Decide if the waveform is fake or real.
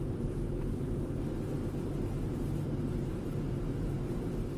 real